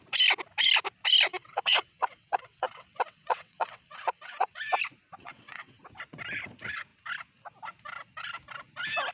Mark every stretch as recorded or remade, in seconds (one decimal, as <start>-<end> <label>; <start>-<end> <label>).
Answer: 0.0-1.3 recorded; 1.3-4.6 remade; 4.6-5.2 recorded; 5.2-5.8 remade; 5.8-9.1 recorded